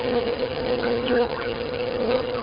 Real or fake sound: fake